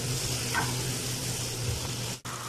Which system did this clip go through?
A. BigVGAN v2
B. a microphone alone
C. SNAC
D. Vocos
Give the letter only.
B